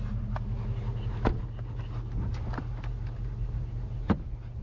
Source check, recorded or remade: recorded